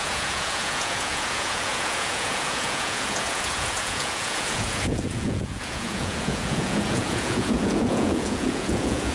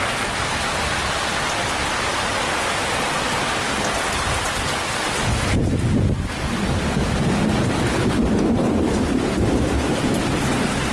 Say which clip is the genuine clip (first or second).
second